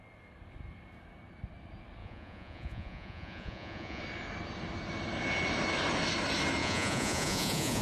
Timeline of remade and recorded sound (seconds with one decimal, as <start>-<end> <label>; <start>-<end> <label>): 0.0-2.0 recorded; 2.0-4.0 remade; 4.0-6.6 recorded; 6.6-7.8 remade